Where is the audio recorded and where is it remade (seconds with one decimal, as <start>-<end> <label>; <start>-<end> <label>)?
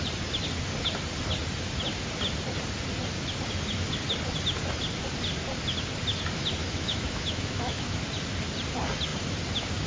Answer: 0.0-6.6 recorded; 6.6-8.0 remade; 8.0-9.9 recorded